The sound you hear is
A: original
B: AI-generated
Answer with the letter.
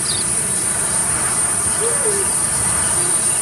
A